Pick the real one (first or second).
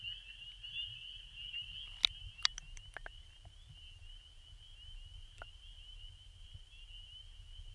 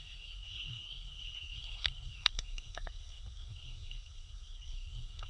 first